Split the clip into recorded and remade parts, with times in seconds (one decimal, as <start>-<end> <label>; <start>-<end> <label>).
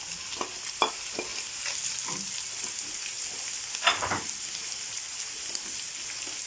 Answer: 0.0-6.5 recorded